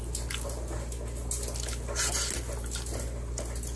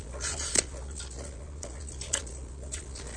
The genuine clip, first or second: first